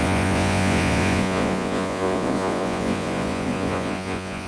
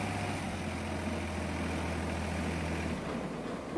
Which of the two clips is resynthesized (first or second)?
first